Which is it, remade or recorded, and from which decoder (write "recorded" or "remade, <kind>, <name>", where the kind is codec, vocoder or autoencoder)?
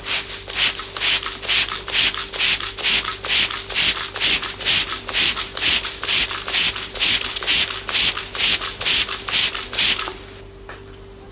recorded